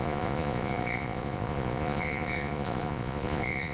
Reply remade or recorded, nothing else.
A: remade